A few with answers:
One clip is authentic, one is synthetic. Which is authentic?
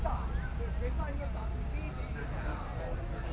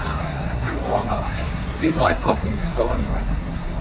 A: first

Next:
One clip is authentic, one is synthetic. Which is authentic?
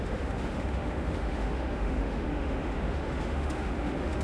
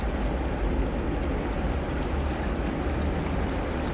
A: second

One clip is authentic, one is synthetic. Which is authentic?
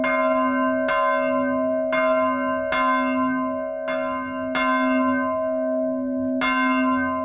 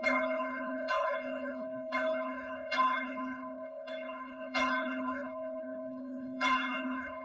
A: first